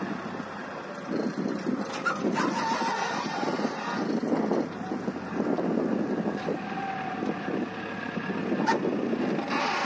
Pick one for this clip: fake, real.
real